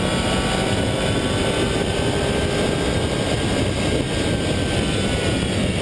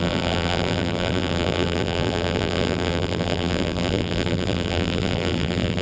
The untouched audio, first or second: first